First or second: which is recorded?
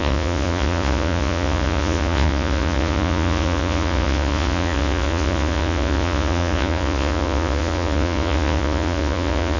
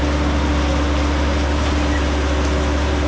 second